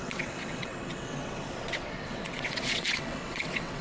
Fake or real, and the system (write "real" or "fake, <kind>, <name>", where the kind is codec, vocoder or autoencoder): fake, vocoder, WaveNeXt